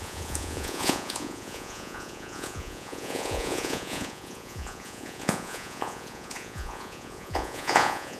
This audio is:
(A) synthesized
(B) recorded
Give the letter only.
A